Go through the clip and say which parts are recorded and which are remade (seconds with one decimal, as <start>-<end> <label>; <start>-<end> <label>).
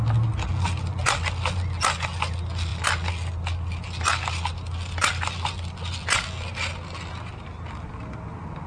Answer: 0.0-8.7 recorded